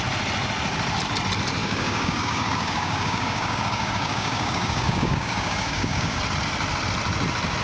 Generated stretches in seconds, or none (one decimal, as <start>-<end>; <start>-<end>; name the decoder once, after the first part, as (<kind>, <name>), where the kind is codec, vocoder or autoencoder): 1.6-6.2 (codec, DAC)

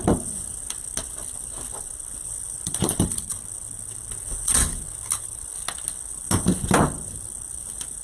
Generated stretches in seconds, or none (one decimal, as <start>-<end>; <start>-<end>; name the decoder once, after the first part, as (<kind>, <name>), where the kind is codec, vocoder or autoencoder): none

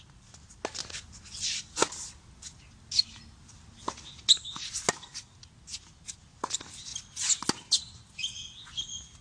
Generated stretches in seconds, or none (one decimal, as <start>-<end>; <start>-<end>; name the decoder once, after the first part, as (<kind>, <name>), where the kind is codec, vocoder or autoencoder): none

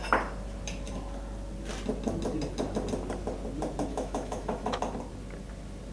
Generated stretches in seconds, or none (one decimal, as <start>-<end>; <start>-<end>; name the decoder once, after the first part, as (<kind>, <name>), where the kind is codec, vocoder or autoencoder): 3.9-4.8 (autoencoder, DAC-VAE)

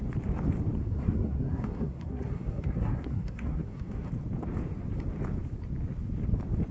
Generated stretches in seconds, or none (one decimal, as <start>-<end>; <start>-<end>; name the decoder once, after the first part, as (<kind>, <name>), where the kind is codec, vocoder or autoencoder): 0.8-4.1 (codec, SNAC)

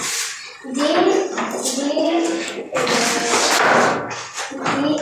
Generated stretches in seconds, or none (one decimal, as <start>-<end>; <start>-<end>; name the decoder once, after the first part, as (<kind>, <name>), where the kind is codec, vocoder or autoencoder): 2.0-3.0 (codec, SNAC); 3.9-4.4

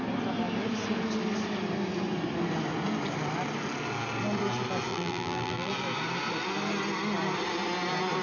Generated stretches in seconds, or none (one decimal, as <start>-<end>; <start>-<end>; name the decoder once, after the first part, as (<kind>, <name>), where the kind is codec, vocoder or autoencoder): 4.9-5.7 (vocoder, BigVGAN v2)